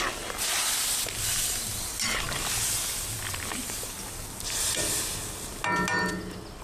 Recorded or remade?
recorded